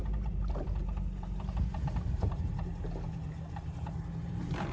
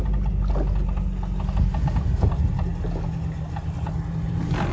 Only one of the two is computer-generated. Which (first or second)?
first